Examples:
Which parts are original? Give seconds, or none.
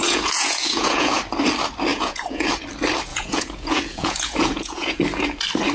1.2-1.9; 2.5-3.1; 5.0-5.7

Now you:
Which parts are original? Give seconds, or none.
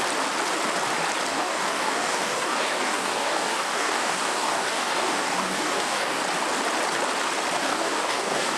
0.0-1.3; 6.2-7.6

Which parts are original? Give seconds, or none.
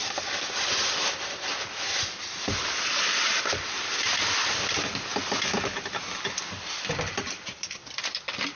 5.1-6.2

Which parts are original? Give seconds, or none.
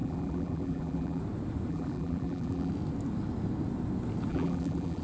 1.2-1.7; 2.7-4.3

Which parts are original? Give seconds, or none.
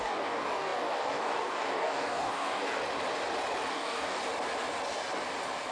2.8-3.7; 4.2-5.7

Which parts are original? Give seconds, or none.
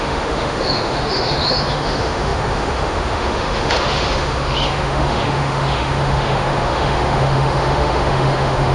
none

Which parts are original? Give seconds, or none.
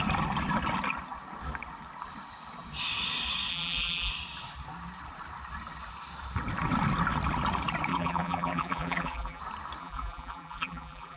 0.0-3.5; 4.1-7.9; 9.4-9.8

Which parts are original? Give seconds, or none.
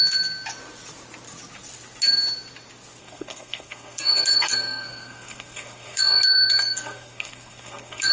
0.0-3.0